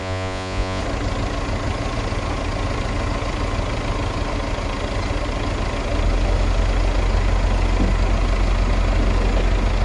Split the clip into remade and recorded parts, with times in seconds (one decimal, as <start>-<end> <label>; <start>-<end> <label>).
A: 0.0-0.8 remade; 0.8-9.8 recorded